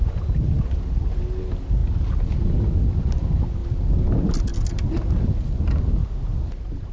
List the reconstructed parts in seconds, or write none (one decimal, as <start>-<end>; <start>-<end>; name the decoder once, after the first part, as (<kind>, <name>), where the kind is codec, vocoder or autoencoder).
none